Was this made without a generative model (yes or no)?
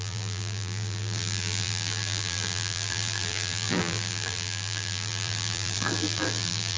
no